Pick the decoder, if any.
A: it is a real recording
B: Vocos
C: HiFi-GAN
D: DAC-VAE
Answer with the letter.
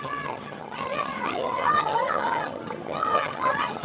C